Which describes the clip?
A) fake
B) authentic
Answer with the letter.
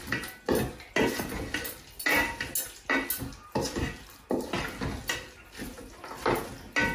B